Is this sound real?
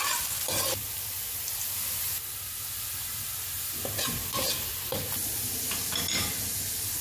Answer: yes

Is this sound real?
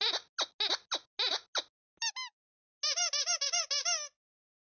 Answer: yes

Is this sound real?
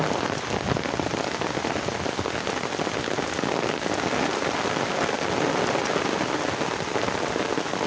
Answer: yes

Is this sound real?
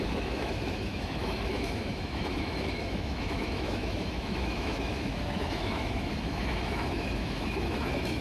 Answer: no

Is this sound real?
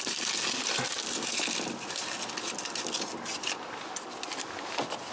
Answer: yes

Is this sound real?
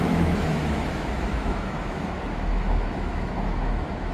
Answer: no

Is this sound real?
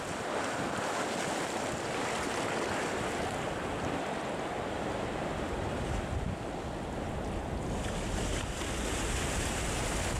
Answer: yes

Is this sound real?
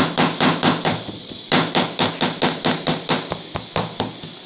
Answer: yes